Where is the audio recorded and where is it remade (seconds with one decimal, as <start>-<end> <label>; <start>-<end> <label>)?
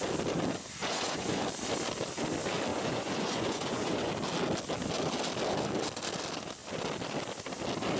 0.0-0.8 recorded; 0.8-1.4 remade; 1.4-2.7 recorded; 2.7-4.1 remade; 4.1-8.0 recorded